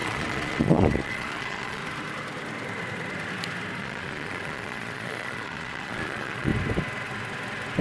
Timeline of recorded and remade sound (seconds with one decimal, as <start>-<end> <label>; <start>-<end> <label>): 0.0-1.8 remade; 1.8-3.8 recorded; 3.8-6.5 remade; 6.5-7.8 recorded